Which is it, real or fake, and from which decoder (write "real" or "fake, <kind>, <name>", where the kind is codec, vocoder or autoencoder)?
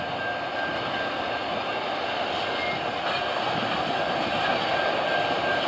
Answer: real